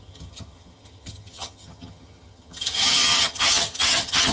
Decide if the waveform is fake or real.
fake